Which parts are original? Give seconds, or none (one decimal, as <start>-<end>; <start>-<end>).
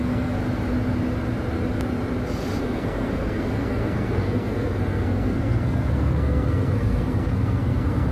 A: 0.4-2.6